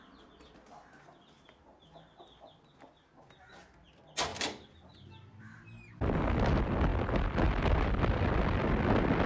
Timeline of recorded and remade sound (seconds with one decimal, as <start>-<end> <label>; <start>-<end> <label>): 0.0-9.3 recorded